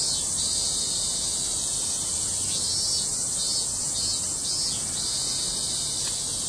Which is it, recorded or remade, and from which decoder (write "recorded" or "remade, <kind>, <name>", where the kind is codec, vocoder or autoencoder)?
recorded